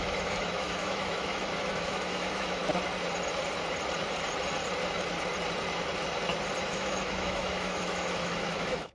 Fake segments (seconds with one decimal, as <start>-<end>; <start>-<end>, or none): 0.0-2.6; 6.6-8.9